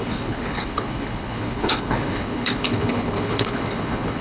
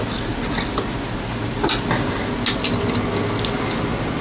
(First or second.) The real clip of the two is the second